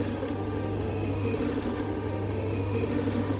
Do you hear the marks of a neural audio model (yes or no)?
yes